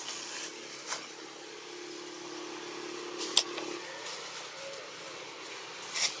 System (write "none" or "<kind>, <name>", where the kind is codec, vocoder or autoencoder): none